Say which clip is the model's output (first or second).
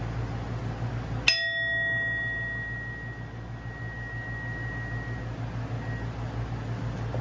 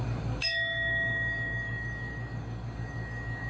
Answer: second